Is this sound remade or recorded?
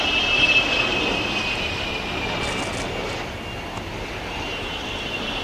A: recorded